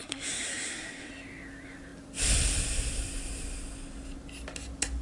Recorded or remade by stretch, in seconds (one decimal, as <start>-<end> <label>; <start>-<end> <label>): 0.0-1.1 remade; 1.1-5.0 recorded